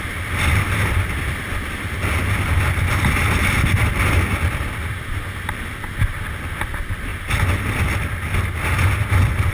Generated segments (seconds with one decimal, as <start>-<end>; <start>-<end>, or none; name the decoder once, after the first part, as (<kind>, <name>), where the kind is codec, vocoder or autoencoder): none